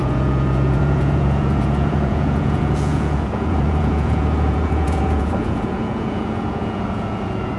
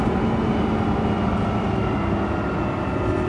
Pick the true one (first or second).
second